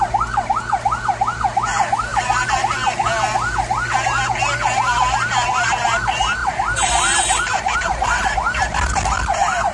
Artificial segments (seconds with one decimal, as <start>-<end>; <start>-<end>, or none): 2.1-2.6; 6.4-9.0